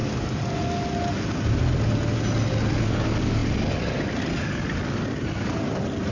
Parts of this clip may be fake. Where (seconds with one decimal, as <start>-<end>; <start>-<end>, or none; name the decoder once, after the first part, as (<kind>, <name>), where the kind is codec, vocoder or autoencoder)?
none